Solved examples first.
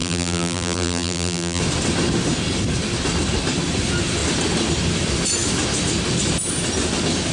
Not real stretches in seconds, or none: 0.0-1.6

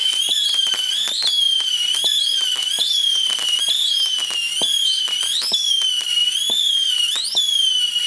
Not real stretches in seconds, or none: 0.0-3.6; 6.2-6.9